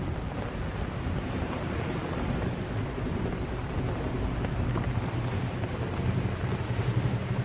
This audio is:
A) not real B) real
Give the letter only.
B